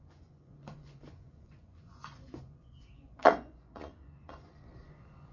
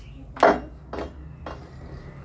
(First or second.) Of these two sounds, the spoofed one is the first